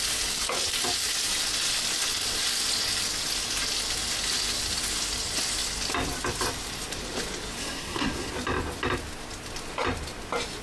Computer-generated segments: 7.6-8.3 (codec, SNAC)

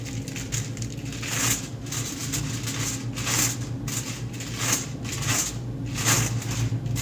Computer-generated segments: none

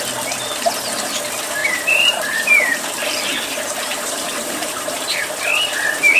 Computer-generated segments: 1.6-5.3 (vocoder, BigVGAN v2)

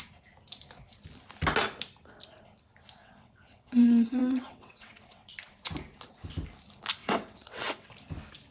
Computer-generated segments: 3.0-5.3 (vocoder, WaveNeXt); 7.0-7.9

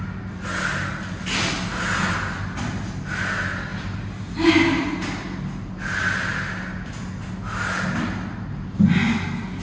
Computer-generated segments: none

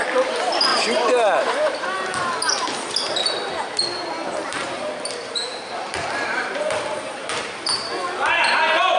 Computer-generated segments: 0.7-1.8 (vocoder, BigVGAN v2); 4.5-7.9